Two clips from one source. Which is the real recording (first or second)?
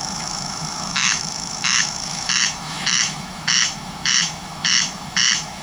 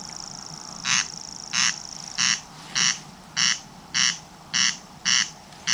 second